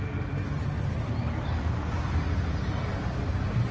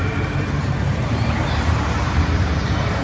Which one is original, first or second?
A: first